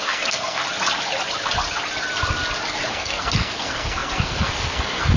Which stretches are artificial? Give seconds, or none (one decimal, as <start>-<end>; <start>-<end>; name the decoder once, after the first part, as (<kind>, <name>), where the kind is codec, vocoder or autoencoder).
0.0-0.6 (codec, SNAC); 2.9-5.2